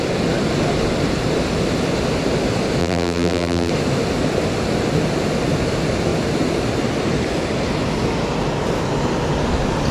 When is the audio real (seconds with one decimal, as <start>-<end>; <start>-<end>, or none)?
0.0-2.8; 3.7-9.9